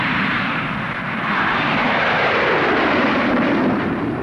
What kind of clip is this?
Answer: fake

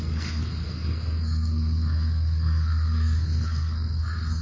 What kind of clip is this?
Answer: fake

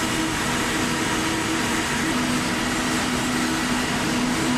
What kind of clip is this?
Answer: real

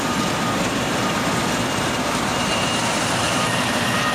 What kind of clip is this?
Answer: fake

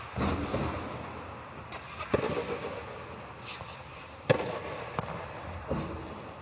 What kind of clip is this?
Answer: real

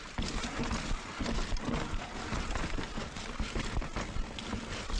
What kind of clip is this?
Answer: real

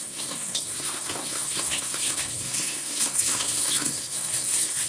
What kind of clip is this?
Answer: fake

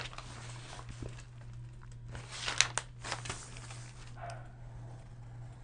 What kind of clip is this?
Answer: real